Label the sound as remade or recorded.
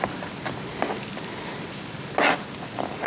recorded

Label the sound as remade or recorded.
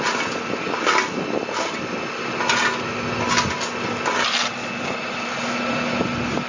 recorded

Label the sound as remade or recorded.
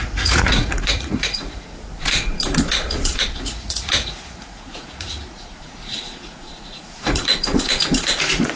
remade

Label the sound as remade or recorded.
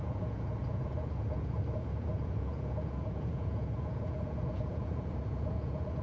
remade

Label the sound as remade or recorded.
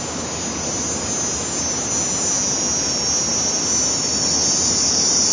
recorded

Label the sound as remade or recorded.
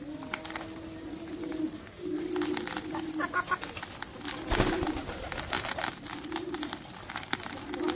recorded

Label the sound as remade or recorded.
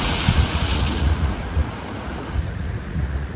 remade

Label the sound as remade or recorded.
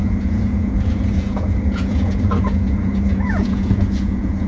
remade